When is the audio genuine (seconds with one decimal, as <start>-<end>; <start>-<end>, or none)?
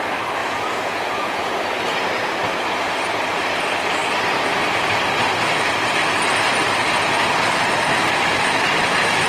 0.0-0.4; 1.6-9.3